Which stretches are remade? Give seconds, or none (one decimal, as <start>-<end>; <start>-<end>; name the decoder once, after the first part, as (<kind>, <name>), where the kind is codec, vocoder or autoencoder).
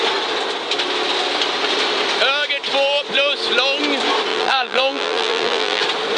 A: 4.3-5.8 (vocoder, BigVGAN v2)